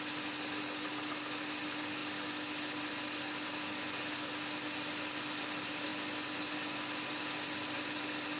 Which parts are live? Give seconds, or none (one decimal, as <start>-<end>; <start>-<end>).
0.0-8.4